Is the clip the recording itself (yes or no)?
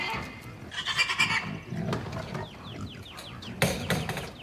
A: yes